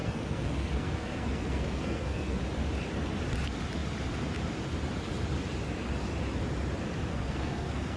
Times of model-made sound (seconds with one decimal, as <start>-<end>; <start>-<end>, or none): 0.0-2.4; 7.1-8.0